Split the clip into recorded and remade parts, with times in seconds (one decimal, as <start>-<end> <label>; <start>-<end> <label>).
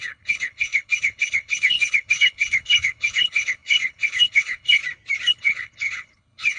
0.0-4.8 remade; 4.8-5.3 recorded; 5.3-6.6 remade